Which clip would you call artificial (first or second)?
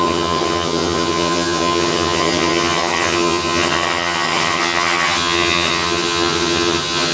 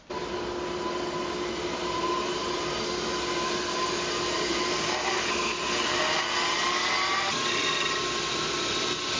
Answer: first